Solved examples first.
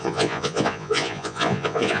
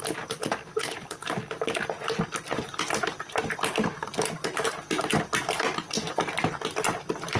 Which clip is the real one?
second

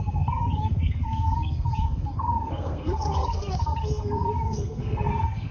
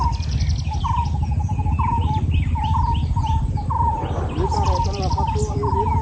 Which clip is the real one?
second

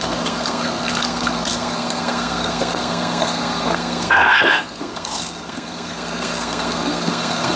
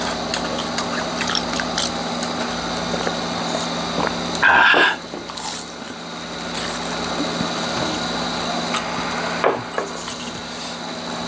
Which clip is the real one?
second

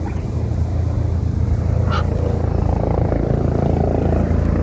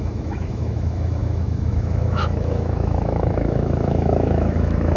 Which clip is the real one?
first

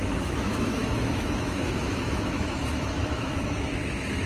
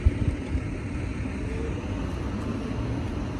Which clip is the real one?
second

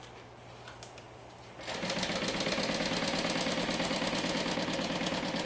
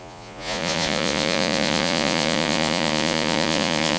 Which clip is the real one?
first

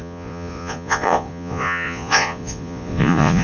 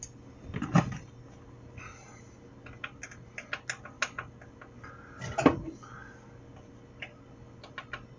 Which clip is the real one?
second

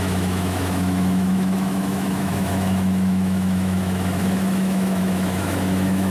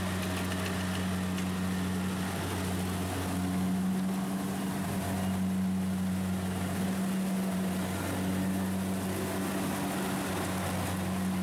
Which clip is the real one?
second